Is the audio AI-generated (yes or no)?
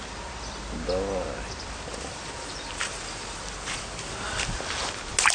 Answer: no